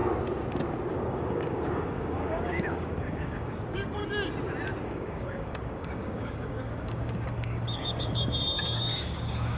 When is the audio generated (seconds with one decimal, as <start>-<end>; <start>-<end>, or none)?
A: 0.9-4.0; 4.8-9.6